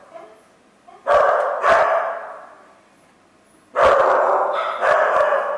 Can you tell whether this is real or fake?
real